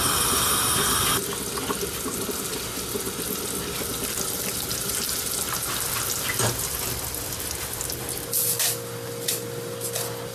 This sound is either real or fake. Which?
real